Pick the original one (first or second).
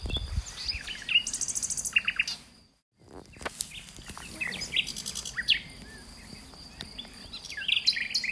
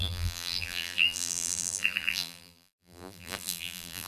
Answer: first